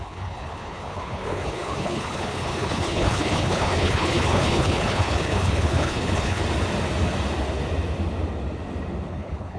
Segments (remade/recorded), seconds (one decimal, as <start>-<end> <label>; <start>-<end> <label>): 0.0-6.4 remade; 6.4-9.1 recorded; 9.1-9.6 remade